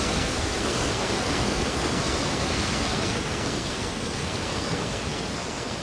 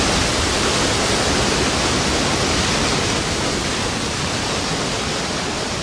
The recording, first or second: second